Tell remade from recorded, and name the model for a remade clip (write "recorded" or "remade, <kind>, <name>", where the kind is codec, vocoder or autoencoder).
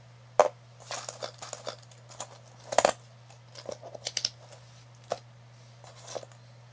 recorded